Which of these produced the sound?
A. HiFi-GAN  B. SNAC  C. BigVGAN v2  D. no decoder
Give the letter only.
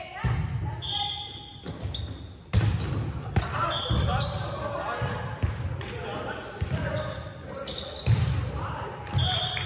D